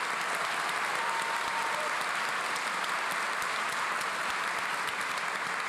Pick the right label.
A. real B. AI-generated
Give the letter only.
A